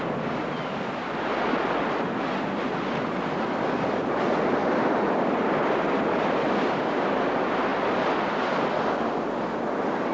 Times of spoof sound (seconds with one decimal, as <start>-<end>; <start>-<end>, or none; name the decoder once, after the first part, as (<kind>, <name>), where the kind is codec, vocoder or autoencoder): none